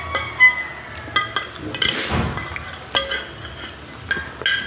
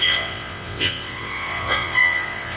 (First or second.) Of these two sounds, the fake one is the second